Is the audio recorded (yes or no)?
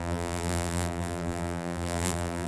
no